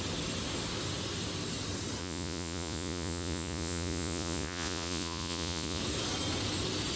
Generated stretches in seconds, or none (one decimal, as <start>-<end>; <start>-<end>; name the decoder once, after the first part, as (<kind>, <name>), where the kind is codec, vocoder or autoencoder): 2.0-5.8 (vocoder, Vocos)